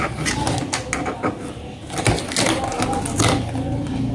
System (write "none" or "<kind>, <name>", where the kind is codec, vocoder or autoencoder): none